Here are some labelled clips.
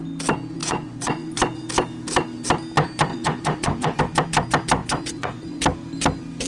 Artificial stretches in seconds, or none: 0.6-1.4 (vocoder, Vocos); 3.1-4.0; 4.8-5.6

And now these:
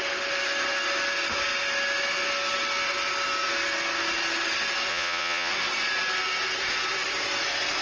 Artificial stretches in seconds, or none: 4.9-5.5 (vocoder, Vocos)